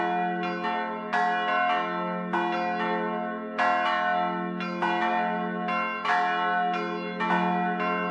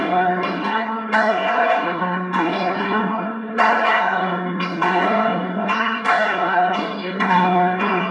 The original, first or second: first